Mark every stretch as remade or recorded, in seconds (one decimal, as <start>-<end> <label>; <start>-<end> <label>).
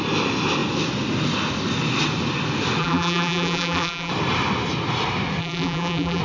0.0-2.8 recorded; 2.8-4.1 remade; 4.1-5.4 recorded; 5.4-6.2 remade